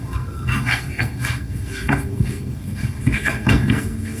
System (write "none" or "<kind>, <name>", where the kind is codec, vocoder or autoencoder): codec, SNAC